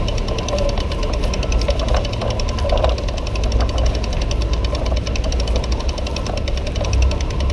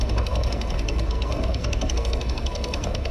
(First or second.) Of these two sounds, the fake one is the second